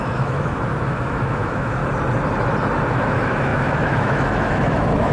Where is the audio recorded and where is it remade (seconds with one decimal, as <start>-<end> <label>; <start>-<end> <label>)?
0.0-1.8 remade; 1.8-2.9 recorded; 2.9-5.1 remade